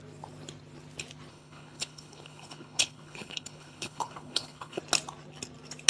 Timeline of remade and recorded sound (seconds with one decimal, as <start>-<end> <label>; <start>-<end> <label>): 0.0-1.3 recorded; 1.3-4.8 remade; 4.8-5.9 recorded